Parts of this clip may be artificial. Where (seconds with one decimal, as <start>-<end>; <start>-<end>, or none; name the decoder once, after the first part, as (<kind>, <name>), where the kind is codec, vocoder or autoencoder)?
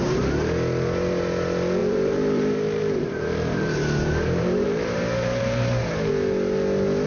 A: 1.8-6.1 (vocoder, BigVGAN v2)